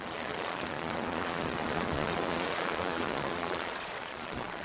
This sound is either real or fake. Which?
fake